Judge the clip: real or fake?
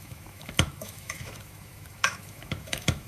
fake